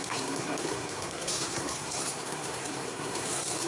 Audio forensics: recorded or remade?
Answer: remade